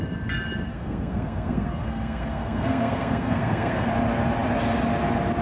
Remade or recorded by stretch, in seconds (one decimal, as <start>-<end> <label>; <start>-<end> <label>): 0.0-0.7 recorded; 0.7-3.9 remade; 3.9-5.4 recorded